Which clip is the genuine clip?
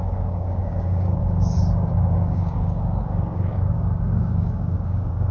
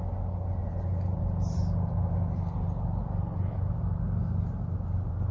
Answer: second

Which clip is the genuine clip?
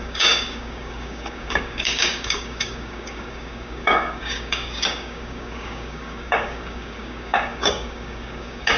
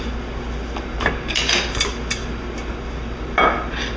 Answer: second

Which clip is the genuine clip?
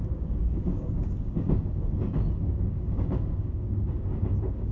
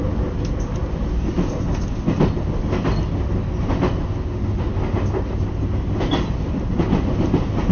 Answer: second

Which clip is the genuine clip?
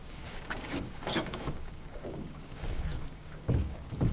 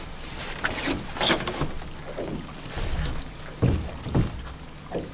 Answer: second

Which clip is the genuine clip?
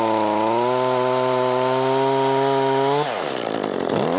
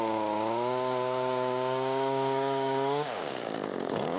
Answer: first